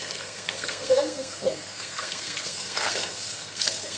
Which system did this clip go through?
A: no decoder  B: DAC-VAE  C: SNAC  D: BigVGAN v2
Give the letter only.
C